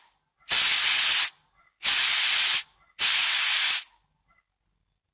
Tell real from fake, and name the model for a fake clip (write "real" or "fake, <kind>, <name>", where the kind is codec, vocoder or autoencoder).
real